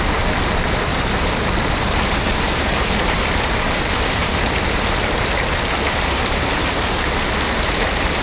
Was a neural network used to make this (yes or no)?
yes